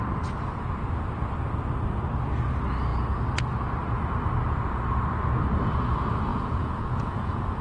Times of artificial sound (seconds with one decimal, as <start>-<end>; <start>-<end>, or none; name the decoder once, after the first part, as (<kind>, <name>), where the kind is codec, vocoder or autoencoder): 6.3-7.6 (vocoder, Vocos)